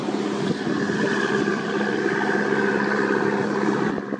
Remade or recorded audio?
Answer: recorded